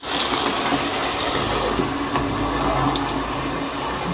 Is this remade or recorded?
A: recorded